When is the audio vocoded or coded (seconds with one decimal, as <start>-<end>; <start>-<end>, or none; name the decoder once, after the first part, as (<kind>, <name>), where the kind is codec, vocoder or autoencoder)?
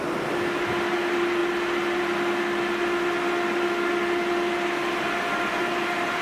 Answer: none